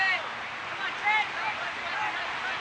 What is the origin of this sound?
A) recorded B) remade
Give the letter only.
A